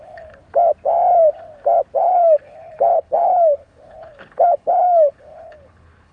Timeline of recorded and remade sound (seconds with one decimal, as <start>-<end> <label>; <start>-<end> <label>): 0.0-0.4 remade; 0.4-2.0 recorded; 2.0-6.1 remade